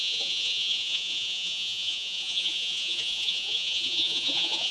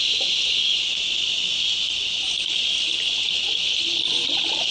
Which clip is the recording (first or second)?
second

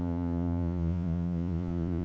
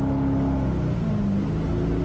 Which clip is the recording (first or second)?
second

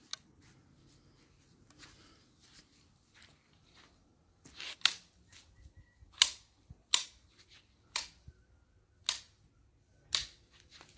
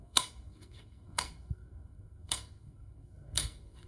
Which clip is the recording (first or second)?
first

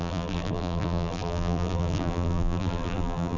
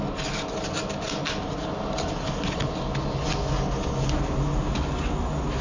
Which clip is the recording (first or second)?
second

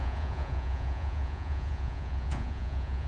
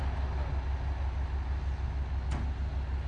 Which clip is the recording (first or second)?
second